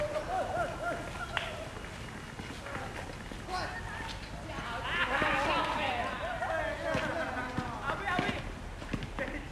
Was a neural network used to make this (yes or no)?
no